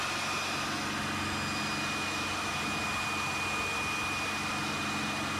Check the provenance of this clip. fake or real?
real